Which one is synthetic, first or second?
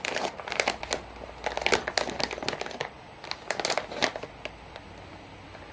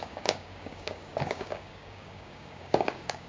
second